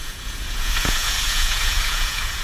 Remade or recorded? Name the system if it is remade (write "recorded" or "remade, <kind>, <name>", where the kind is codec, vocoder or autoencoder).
remade, vocoder, Vocos